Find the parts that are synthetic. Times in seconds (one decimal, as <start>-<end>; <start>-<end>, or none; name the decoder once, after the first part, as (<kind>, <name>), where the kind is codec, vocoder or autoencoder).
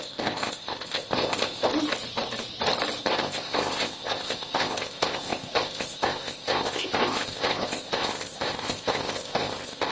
0.0-1.7 (codec, ZipCodec); 3.0-9.9